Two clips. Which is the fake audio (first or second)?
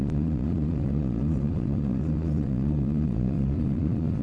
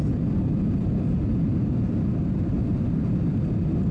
first